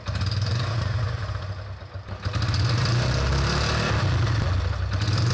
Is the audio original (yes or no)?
yes